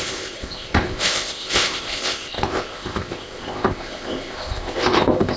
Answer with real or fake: fake